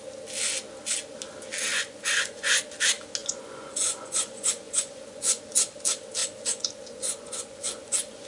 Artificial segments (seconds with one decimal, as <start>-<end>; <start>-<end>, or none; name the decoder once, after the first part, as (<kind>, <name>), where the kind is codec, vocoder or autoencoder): 1.7-2.6 (vocoder, Vocos); 3.2-5.4; 6.2-8.3